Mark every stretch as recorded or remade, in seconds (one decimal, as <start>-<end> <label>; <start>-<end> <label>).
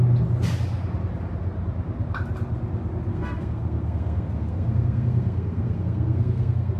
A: 0.0-3.1 recorded; 3.1-6.8 remade